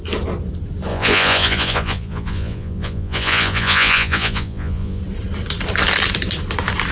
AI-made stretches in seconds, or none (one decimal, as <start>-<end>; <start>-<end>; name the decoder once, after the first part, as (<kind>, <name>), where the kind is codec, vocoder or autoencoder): 0.9-5.0 (vocoder, Vocos)